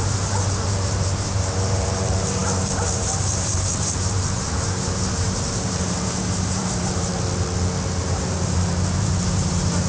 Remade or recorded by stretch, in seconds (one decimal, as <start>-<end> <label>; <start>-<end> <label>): 0.0-7.1 remade; 7.1-8.0 recorded; 8.0-9.9 remade